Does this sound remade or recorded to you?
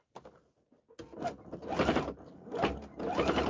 recorded